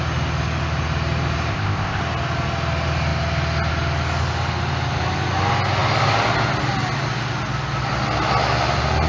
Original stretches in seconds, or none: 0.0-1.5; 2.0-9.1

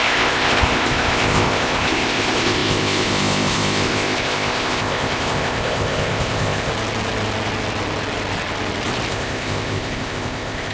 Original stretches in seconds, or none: 6.7-9.1